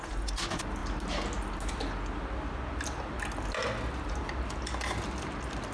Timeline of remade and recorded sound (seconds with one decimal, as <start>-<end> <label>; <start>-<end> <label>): 0.0-5.7 recorded